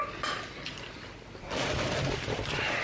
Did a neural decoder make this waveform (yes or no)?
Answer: yes